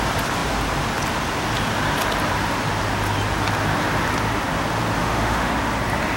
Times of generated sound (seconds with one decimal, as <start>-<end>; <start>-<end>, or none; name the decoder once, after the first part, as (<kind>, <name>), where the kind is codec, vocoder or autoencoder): 5.0-5.5 (autoencoder, DAC-VAE)